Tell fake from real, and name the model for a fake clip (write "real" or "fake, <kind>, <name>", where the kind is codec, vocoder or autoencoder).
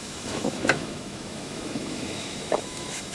fake, autoencoder, DAC-VAE